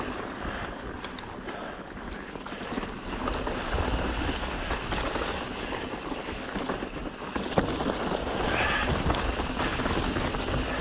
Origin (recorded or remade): recorded